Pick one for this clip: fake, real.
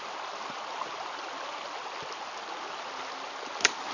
real